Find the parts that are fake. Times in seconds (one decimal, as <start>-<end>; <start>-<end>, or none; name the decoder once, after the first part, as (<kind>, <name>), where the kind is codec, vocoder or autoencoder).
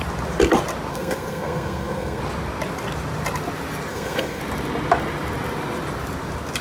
0.9-2.2 (codec, SNAC); 3.9-4.4